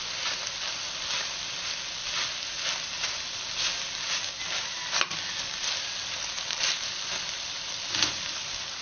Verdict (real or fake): real